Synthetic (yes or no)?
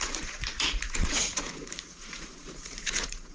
yes